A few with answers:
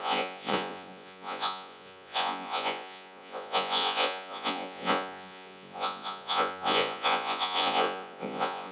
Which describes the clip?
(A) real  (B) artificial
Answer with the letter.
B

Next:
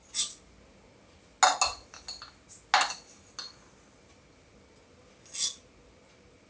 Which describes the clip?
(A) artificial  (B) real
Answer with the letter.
B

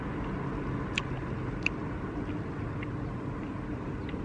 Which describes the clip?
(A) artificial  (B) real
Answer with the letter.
B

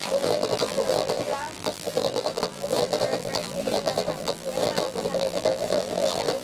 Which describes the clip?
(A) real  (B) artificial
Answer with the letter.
B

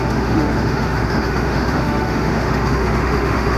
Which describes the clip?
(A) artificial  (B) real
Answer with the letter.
A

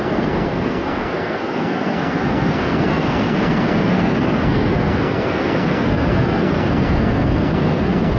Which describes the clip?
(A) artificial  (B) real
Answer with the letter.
A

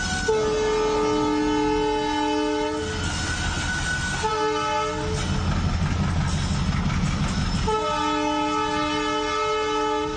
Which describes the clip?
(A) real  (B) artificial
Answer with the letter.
A